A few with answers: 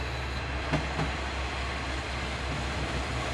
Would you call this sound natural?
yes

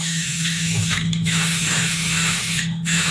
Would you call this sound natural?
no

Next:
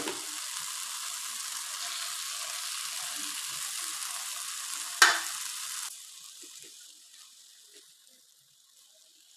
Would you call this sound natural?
yes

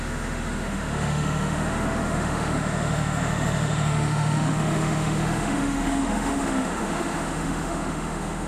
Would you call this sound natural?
no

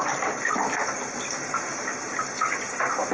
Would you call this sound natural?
yes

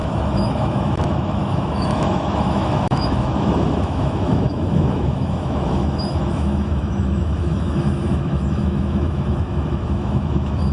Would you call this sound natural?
no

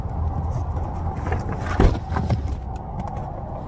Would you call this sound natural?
yes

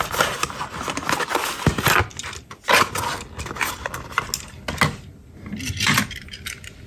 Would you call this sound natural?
yes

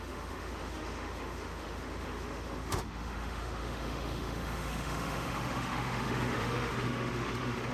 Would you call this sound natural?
no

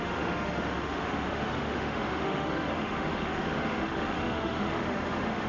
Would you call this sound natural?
no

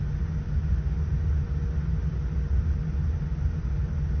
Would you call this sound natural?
yes